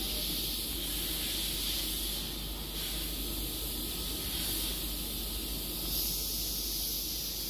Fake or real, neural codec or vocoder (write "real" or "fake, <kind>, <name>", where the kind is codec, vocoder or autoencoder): real